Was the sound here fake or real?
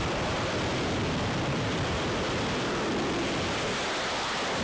fake